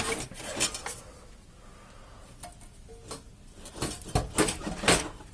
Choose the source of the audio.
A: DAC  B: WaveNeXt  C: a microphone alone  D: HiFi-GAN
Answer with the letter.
C